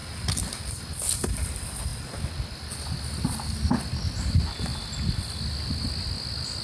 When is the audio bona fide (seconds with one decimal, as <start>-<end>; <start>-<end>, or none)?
0.0-0.6; 1.9-4.2; 4.7-5.5